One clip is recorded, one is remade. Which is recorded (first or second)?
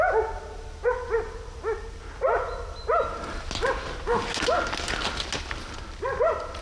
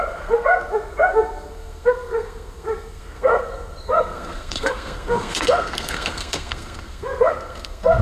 first